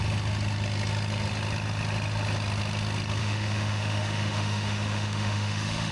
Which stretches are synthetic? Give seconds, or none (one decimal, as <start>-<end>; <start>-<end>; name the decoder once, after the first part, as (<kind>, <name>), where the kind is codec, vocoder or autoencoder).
3.2-5.9 (autoencoder, DAC-VAE)